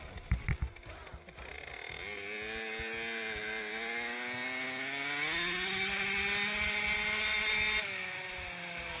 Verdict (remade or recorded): recorded